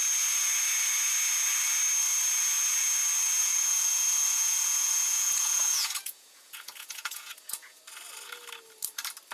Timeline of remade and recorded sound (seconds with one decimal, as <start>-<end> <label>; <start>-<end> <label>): 0.0-3.4 recorded; 3.4-7.8 remade; 7.8-9.3 recorded